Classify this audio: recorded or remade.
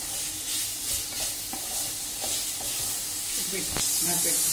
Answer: recorded